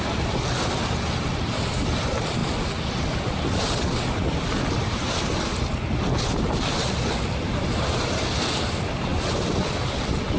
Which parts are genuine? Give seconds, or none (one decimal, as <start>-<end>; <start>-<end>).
0.0-10.4